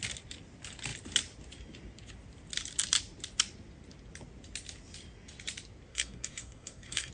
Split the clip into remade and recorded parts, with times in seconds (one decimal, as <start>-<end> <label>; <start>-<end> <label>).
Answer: 0.0-5.9 recorded; 5.9-7.1 remade